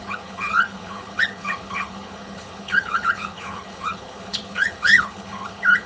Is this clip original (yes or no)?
no